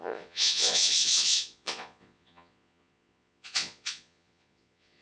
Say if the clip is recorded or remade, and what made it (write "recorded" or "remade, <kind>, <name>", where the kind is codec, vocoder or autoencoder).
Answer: remade, vocoder, Vocos